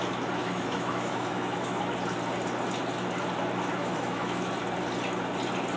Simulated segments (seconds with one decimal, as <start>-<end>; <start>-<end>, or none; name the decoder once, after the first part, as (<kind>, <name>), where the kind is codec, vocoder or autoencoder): 0.4-1.8 (autoencoder, DAC-VAE); 3.8-4.5